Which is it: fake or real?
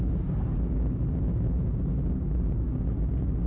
real